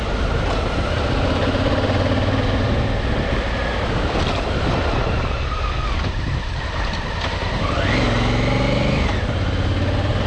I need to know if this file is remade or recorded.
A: recorded